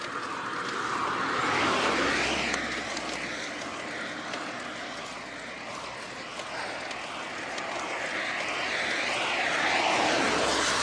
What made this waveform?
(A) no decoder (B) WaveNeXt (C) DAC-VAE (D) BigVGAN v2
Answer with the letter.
A